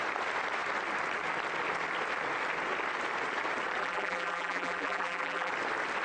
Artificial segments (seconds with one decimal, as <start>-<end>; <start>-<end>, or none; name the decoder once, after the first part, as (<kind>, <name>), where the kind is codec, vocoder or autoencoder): 3.8-5.5 (vocoder, BigVGAN v2)